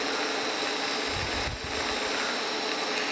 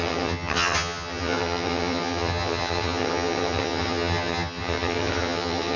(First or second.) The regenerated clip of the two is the second